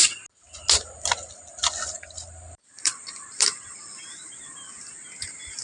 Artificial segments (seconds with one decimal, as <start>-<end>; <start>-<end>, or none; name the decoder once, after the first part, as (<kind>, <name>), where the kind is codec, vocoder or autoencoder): 1.5-4.9 (vocoder, BigVGAN v2)